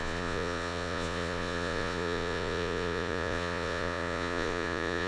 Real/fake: fake